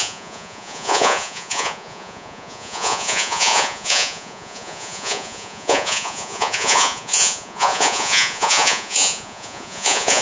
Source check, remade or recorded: remade